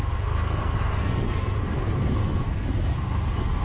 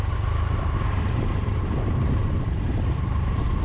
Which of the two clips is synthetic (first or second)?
first